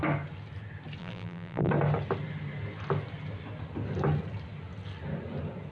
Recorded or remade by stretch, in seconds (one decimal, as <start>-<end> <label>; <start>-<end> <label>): 0.0-1.0 recorded; 1.0-1.7 remade; 1.7-5.7 recorded